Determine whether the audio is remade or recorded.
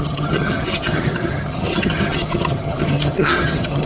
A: remade